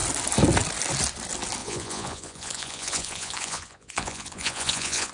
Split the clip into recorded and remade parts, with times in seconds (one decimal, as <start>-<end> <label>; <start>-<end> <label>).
0.0-1.6 recorded; 1.6-5.1 remade